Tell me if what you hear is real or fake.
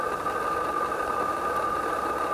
real